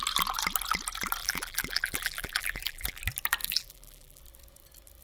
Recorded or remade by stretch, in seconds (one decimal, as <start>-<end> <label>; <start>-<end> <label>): 0.0-1.2 recorded; 1.2-3.0 remade; 3.0-3.4 recorded; 3.4-4.2 remade; 4.2-5.0 recorded